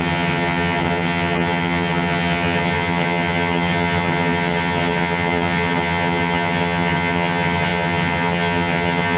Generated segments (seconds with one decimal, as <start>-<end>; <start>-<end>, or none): 0.0-9.2